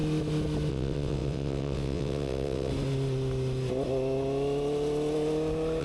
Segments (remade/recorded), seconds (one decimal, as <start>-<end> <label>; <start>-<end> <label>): 0.0-0.7 recorded; 0.7-2.7 remade; 2.7-5.8 recorded